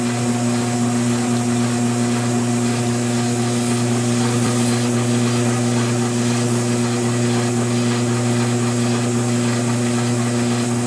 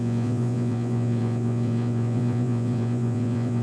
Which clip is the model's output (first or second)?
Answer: second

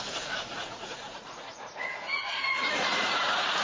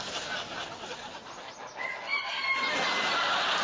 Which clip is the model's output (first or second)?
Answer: first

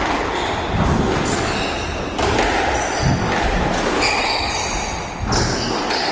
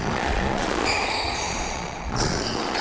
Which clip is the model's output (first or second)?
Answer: second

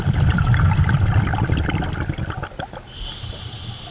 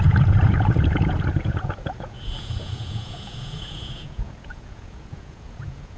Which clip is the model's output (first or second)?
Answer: second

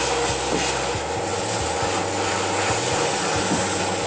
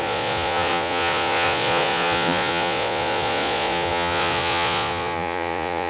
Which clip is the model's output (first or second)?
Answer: second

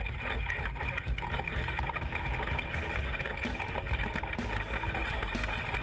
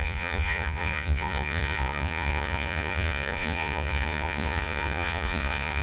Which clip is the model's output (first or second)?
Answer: second